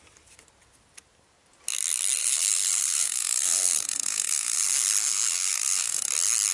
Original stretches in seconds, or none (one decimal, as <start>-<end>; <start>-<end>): 0.0-2.2; 6.1-6.5